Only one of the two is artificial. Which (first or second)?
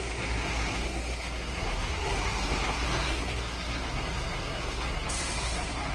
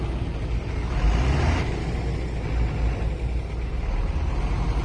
first